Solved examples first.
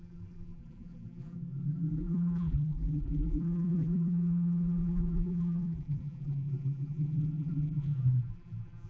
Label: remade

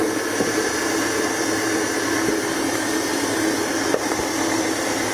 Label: recorded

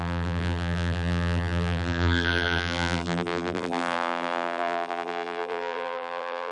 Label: remade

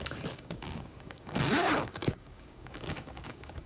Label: remade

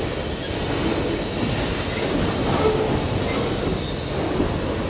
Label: recorded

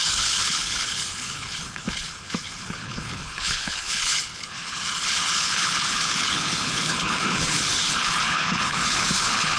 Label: remade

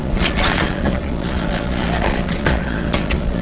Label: remade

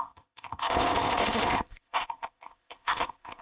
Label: remade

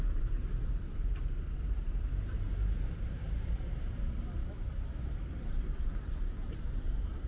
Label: remade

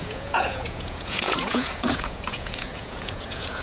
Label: remade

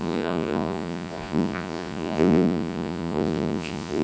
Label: remade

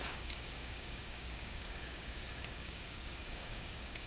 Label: remade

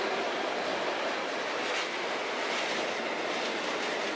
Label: recorded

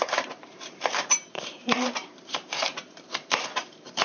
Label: remade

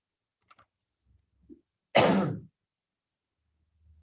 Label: recorded